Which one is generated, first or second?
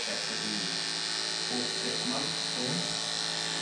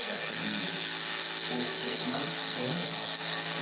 second